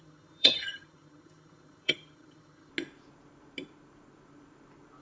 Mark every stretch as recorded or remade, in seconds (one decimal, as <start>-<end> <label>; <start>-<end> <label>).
0.0-2.7 remade; 2.7-5.0 recorded